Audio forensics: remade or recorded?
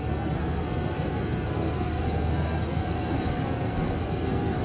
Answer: remade